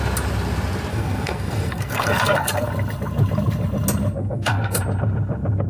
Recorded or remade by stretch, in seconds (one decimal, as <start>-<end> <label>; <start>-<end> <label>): 0.0-0.9 recorded; 0.9-2.7 remade; 2.7-4.2 recorded; 4.2-4.8 remade; 4.8-5.7 recorded